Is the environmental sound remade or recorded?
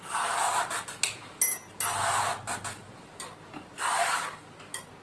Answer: recorded